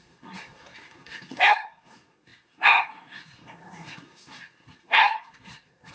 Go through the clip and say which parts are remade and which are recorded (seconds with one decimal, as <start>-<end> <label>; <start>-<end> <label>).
0.0-5.9 remade